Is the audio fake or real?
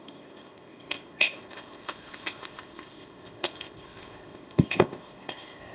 fake